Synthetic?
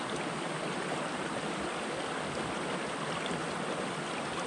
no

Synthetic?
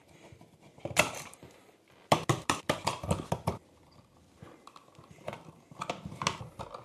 no